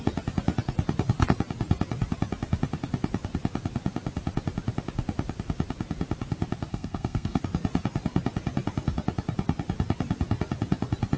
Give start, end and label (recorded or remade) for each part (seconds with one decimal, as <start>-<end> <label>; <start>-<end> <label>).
0.0-6.7 recorded; 6.7-7.4 remade; 7.4-11.2 recorded